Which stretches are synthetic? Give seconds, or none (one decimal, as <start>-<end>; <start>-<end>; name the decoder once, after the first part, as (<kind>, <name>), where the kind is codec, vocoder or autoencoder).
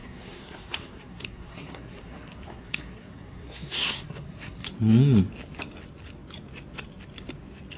0.0-4.7 (codec, SNAC)